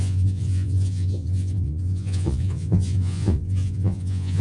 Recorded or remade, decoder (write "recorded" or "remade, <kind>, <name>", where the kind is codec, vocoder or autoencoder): remade, vocoder, Vocos